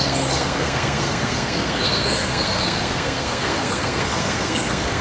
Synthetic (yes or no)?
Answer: yes